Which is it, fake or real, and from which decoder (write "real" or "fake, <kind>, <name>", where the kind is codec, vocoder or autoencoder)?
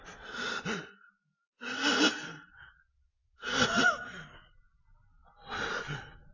real